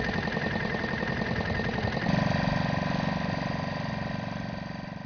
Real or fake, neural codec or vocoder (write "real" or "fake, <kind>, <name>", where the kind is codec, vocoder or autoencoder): real